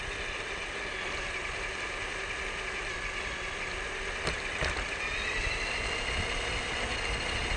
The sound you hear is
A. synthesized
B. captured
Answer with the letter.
B